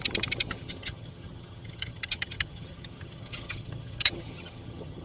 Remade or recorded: remade